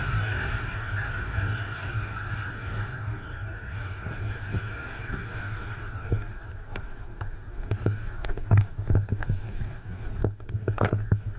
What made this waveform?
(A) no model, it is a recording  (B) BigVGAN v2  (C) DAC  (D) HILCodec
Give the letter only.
C